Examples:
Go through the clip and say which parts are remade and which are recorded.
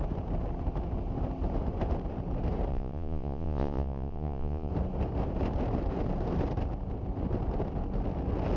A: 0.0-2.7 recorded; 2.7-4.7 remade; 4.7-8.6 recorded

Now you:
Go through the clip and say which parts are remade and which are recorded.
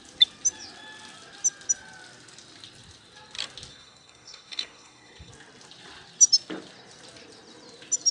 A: 0.0-3.7 recorded; 3.7-5.3 remade; 5.3-8.1 recorded